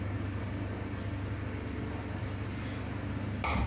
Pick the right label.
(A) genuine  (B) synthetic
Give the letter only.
A